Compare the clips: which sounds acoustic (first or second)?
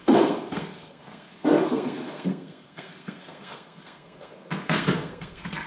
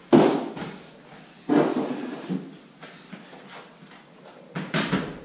second